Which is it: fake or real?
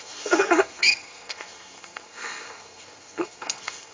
fake